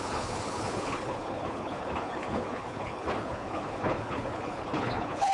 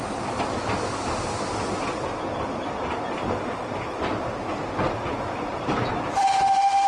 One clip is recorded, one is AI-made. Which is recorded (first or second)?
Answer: second